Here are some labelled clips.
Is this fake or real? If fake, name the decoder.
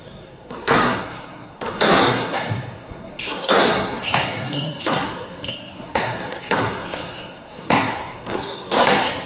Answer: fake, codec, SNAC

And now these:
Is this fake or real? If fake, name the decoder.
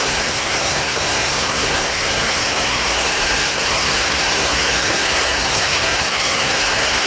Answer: fake, codec, SNAC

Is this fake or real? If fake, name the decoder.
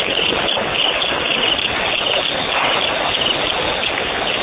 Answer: real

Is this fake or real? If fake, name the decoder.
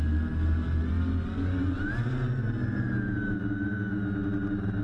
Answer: real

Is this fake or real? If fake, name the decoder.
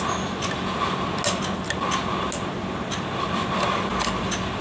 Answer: real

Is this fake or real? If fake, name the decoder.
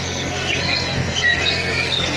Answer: fake, codec, SNAC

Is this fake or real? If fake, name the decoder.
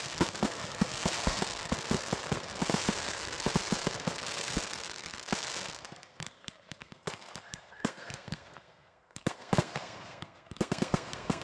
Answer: fake, codec, SNAC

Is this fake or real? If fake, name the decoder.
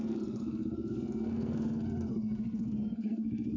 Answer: fake, codec, SNAC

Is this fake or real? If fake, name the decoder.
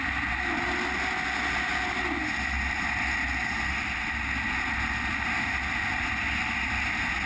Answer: real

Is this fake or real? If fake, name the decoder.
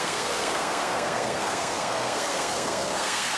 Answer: fake, codec, SNAC